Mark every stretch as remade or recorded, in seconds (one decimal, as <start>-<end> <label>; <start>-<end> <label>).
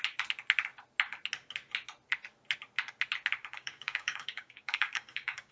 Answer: 0.0-3.4 recorded; 3.4-5.5 remade